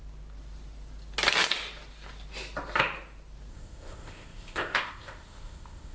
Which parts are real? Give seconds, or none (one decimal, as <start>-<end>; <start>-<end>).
0.0-3.5